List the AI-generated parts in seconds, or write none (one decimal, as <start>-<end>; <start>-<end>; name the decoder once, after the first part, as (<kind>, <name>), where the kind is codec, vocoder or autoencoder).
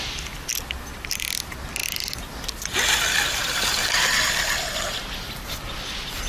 none